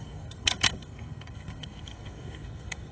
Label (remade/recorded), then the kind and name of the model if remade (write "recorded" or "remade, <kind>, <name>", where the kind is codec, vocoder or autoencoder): remade, codec, SNAC